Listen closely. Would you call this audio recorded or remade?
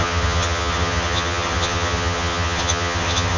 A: remade